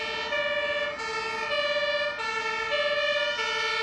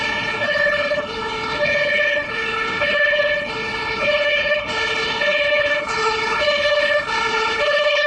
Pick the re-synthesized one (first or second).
second